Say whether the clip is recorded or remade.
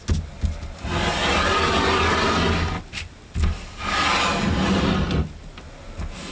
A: recorded